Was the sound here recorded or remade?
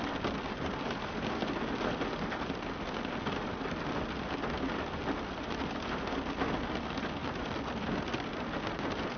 recorded